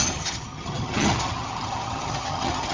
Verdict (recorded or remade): remade